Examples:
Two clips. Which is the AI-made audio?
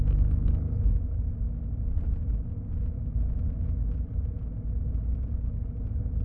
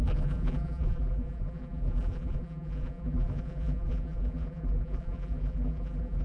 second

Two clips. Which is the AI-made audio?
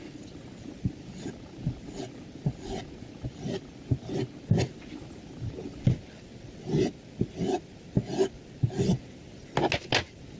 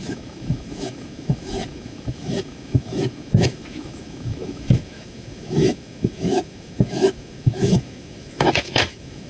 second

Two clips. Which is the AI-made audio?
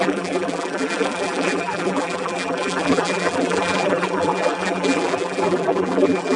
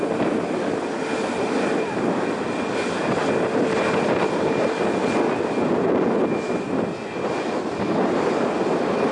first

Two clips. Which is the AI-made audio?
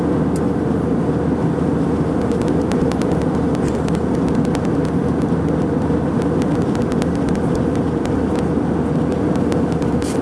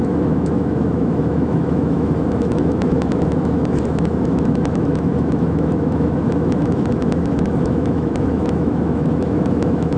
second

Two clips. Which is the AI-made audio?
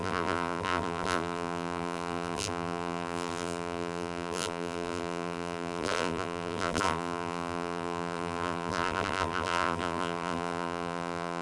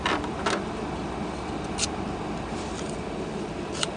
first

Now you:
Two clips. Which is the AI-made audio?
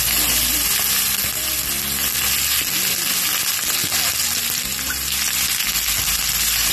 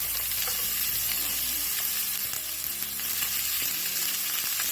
second